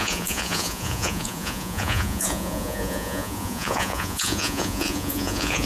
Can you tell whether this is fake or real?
fake